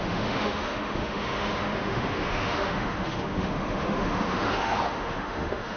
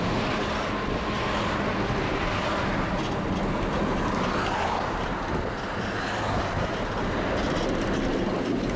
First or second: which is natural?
second